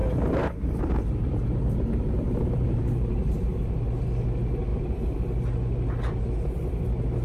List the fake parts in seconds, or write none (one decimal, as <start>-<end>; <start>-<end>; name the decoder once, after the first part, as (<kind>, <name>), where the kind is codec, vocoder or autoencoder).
0.0-4.0 (vocoder, BigVGAN v2); 4.7-5.2